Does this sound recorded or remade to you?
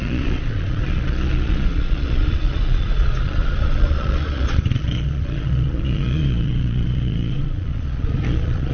remade